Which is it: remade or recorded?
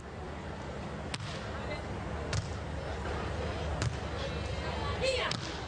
recorded